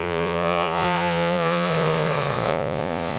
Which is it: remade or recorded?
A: remade